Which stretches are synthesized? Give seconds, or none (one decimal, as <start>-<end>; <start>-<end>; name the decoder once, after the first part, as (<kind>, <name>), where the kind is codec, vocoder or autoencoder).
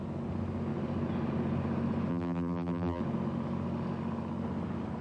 2.1-3.0 (vocoder, BigVGAN v2)